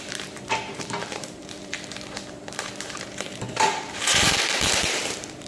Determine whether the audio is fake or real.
fake